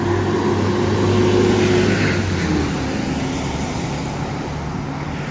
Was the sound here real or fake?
real